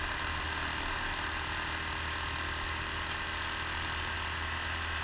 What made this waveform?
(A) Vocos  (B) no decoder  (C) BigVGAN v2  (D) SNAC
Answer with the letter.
B